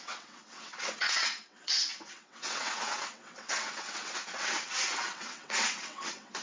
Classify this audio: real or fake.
fake